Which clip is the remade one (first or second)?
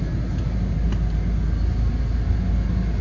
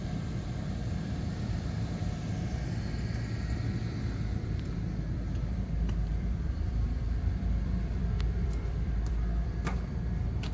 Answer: second